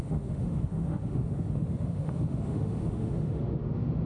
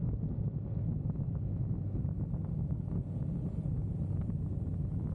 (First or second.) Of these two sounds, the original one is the second